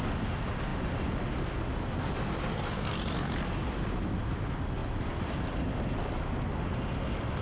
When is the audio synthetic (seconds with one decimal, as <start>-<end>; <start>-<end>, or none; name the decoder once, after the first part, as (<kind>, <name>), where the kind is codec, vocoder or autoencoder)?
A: 4.8-5.4 (vocoder, BigVGAN v2)